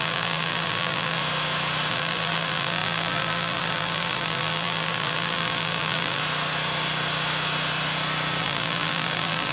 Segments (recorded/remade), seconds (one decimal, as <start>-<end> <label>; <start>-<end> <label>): 0.0-1.2 remade; 1.2-1.9 recorded; 1.9-6.2 remade; 6.2-8.4 recorded; 8.4-9.5 remade